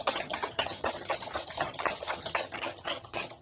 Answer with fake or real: fake